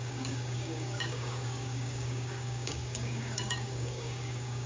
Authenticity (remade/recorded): remade